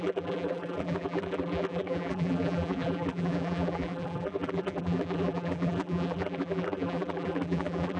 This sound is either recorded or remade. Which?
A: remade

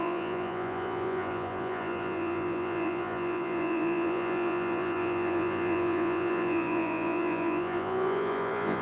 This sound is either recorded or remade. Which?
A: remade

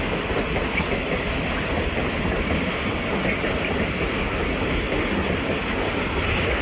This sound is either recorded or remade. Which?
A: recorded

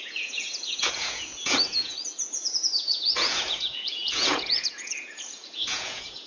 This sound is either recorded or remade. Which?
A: remade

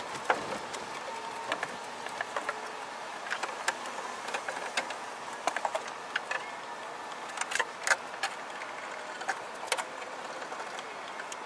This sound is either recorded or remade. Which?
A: recorded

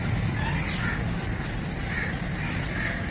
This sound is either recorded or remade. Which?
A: recorded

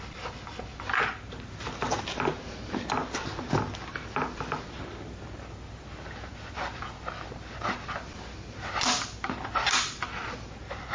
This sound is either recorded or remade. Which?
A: recorded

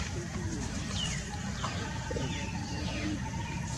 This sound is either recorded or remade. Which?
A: remade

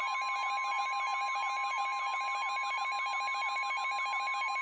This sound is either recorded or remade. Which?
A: recorded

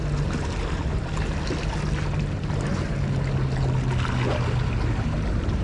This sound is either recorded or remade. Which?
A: recorded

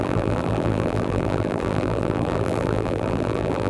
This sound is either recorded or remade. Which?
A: remade